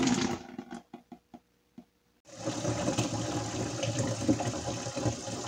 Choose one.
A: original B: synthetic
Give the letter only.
A